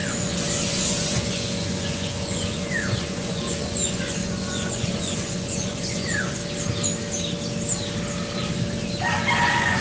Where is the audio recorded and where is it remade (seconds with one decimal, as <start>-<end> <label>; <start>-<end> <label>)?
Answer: 0.0-6.4 remade; 6.4-9.4 recorded; 9.4-9.8 remade